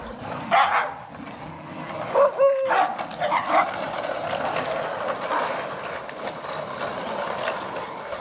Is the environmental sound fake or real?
real